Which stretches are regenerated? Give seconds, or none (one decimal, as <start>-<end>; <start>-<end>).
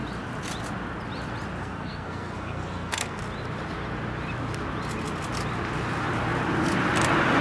1.6-3.2